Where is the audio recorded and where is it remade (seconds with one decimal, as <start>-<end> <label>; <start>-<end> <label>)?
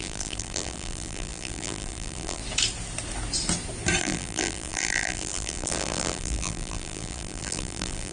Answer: 0.0-2.4 remade; 2.4-4.0 recorded; 4.0-8.1 remade